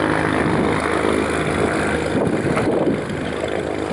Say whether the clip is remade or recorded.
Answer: recorded